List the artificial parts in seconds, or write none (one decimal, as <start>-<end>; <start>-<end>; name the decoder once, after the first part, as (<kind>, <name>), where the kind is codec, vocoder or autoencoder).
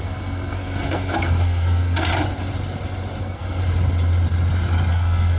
0.0-2.1 (codec, SNAC); 3.2-3.6; 4.9-5.4